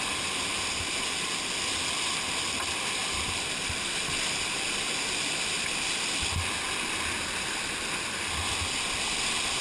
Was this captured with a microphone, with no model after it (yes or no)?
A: yes